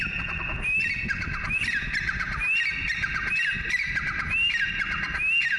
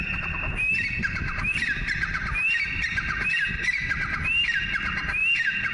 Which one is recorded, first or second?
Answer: first